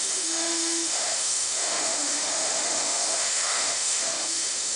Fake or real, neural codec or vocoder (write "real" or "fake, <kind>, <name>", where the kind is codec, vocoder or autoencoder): fake, autoencoder, DAC-VAE